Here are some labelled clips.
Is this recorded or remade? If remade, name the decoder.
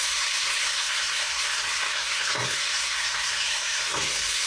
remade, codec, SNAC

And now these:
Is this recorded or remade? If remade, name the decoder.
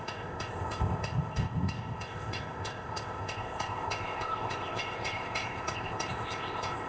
remade, codec, ZipCodec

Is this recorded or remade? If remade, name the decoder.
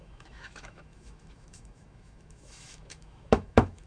remade, autoencoder, DAC-VAE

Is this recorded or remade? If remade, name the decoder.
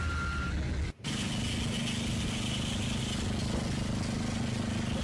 recorded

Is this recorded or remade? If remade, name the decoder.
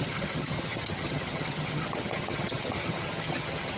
remade, vocoder, HiFi-GAN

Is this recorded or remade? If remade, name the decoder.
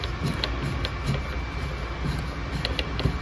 recorded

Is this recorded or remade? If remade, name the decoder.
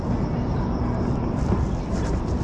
remade, vocoder, BigVGAN v2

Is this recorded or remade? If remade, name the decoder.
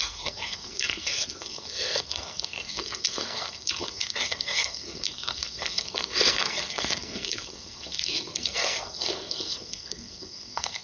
remade, codec, SNAC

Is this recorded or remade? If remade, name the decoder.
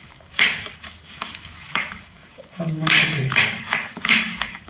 remade, codec, DAC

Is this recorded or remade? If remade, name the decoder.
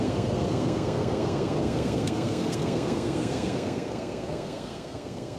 remade, codec, SNAC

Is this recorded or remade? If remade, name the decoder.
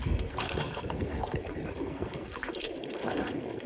remade, codec, SNAC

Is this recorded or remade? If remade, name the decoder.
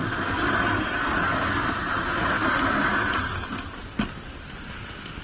recorded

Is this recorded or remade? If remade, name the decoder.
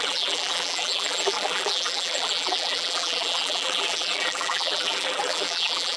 remade, vocoder, BigVGAN v2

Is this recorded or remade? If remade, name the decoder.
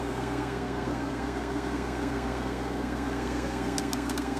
remade, codec, SNAC